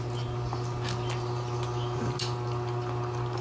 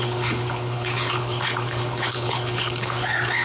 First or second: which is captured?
first